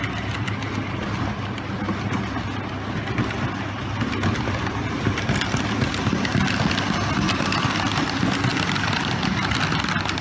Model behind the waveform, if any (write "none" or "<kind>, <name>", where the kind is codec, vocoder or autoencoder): none